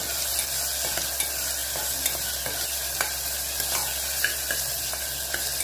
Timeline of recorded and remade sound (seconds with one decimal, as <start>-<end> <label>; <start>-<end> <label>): 0.0-5.6 recorded